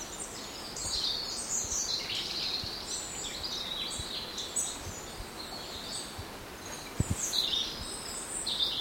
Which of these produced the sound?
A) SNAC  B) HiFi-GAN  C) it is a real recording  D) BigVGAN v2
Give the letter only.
C